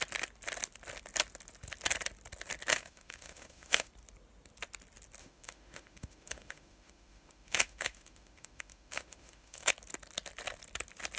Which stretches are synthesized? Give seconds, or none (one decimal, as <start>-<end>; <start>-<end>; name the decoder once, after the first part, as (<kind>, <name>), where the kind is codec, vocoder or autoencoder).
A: 2.7-3.9 (autoencoder, DAC-VAE); 5.2-9.7